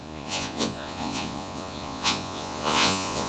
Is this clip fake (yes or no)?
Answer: yes